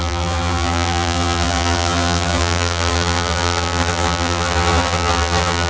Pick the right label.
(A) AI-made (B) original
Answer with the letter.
A